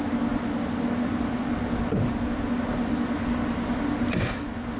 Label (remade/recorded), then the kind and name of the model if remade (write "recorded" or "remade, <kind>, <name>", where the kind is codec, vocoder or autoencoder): recorded